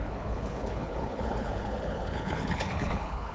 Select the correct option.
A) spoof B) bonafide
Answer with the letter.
A